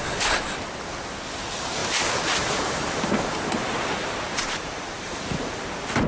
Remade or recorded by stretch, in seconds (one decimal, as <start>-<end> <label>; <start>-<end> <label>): 0.0-1.8 recorded; 1.8-5.5 remade; 5.5-6.1 recorded